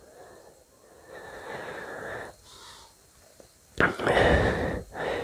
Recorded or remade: recorded